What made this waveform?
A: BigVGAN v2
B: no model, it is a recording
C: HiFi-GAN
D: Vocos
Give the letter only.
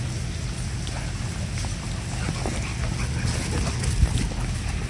B